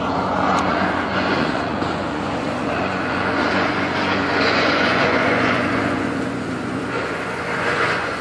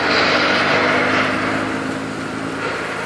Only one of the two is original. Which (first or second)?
second